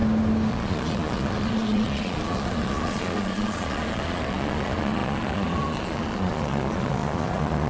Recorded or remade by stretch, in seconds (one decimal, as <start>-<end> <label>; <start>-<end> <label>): 0.0-0.5 recorded; 0.5-7.7 remade